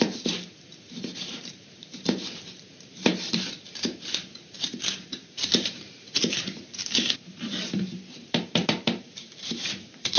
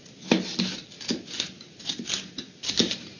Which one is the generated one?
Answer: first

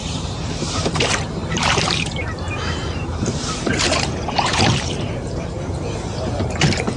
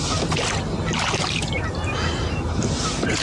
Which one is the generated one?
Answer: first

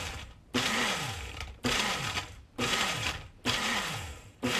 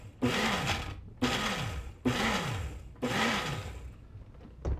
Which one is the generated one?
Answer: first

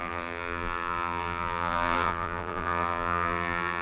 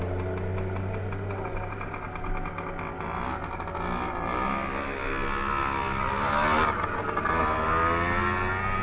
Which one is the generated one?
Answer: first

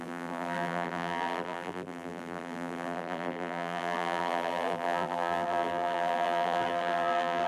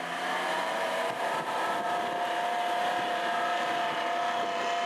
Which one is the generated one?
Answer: first